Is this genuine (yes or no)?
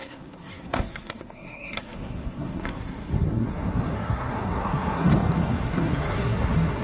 no